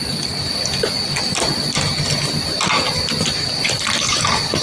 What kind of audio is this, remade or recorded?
recorded